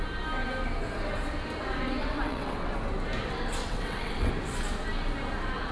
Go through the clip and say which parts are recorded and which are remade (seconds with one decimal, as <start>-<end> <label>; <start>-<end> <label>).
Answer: 0.0-2.0 recorded; 2.0-2.7 remade; 2.7-3.6 recorded; 3.6-4.3 remade; 4.3-5.7 recorded